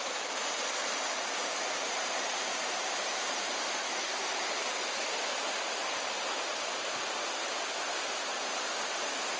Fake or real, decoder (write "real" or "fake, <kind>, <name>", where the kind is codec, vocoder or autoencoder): fake, vocoder, BigVGAN v2